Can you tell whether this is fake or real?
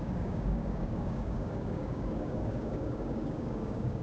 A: fake